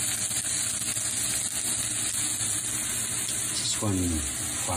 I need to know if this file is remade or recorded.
recorded